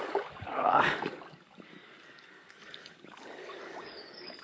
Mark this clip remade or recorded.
remade